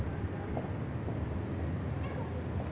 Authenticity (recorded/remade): recorded